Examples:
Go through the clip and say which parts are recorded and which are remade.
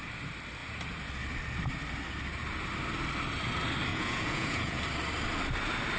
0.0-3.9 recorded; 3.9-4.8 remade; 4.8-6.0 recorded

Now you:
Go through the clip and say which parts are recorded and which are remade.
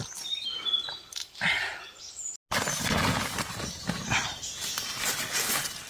0.0-5.9 recorded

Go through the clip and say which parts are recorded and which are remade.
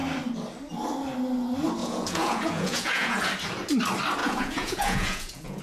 0.0-1.8 recorded; 1.8-3.2 remade; 3.2-4.2 recorded; 4.2-5.6 remade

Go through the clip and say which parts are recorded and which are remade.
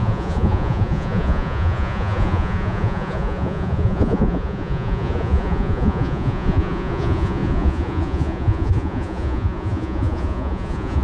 0.0-11.0 remade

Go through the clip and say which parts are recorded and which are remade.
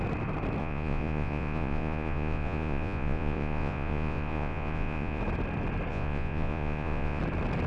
0.0-0.6 recorded; 0.6-5.2 remade; 5.2-5.9 recorded; 5.9-7.2 remade; 7.2-7.7 recorded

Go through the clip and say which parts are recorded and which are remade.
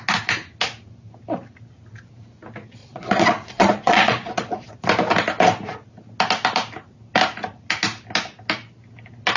0.0-2.8 recorded; 2.8-4.7 remade; 4.7-9.4 recorded